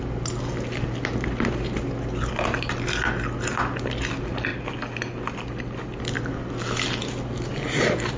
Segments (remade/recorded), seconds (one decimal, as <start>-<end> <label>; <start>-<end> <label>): 0.0-8.2 recorded